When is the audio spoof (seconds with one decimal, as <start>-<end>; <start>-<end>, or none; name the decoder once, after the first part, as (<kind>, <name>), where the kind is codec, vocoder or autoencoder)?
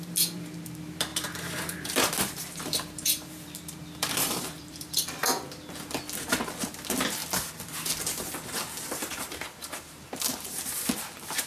0.0-5.2 (vocoder, BigVGAN v2); 6.2-7.2; 9.1-11.5